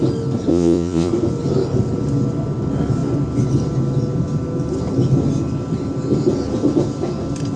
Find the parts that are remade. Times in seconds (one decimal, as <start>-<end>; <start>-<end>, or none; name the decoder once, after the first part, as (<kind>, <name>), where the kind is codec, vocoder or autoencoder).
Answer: 0.5-1.1 (vocoder, Vocos)